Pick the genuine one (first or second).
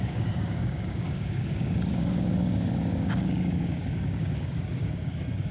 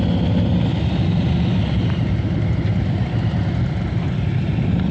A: second